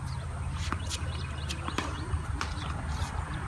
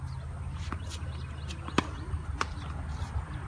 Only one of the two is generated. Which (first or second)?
first